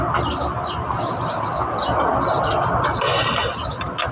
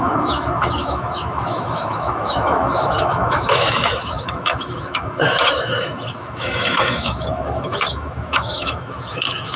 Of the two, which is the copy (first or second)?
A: second